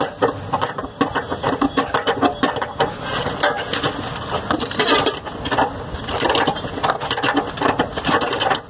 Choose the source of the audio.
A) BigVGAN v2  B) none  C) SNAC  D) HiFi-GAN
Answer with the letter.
B